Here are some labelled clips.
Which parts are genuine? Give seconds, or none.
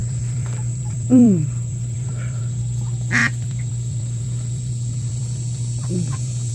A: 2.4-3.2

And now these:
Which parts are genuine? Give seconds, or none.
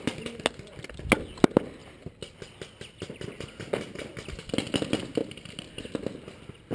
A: 0.0-5.2; 5.7-6.7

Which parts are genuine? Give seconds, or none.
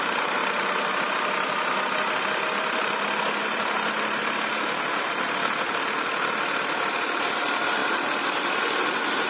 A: 0.0-7.8; 8.6-9.3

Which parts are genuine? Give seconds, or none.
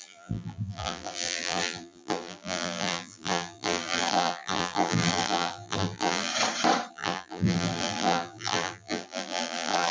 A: 6.3-6.9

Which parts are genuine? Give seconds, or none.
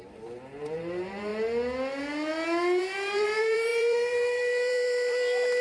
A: 1.3-2.8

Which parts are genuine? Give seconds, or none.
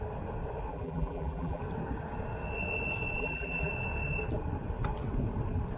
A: 0.0-0.7; 1.6-3.2; 3.7-5.8